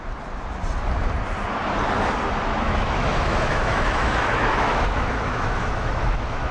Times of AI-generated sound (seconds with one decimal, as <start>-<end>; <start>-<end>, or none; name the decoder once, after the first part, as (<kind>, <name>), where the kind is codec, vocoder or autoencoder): 2.5-6.5 (autoencoder, DAC-VAE)